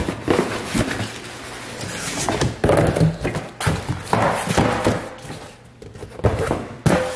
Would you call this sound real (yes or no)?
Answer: yes